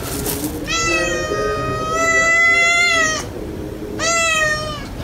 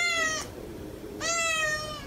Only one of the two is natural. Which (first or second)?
first